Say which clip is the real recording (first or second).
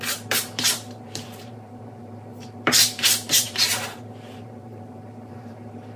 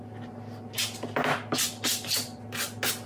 second